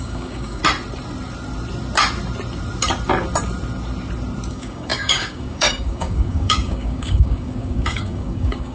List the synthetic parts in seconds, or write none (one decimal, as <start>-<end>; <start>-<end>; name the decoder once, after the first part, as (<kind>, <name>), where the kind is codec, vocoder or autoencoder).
0.0-0.6 (codec, DAC); 4.5-8.7